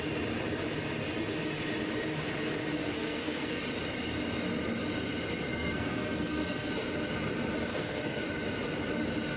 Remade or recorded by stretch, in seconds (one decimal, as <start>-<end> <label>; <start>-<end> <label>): 0.0-2.8 recorded; 2.8-3.6 remade; 3.6-5.5 recorded; 5.5-6.7 remade; 6.7-7.7 recorded; 7.7-8.2 remade; 8.2-9.4 recorded